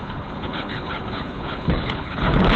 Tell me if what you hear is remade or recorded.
remade